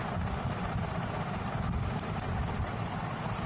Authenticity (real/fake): real